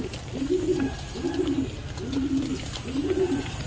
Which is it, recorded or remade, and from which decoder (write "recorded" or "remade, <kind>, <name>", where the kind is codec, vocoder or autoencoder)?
recorded